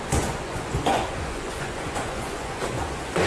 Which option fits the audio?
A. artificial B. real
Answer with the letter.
A